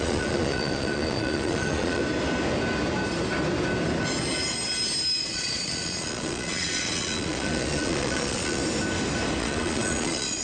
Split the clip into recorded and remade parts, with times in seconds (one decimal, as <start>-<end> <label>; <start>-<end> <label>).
0.0-2.0 remade; 2.0-5.2 recorded; 5.2-8.6 remade; 8.6-9.4 recorded; 9.4-10.4 remade